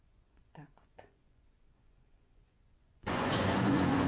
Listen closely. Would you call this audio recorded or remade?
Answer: remade